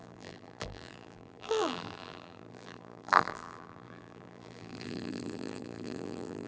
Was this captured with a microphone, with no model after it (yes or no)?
no